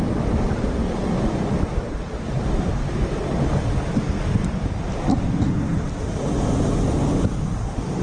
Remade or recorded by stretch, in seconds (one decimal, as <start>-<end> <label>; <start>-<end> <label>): 0.0-8.0 recorded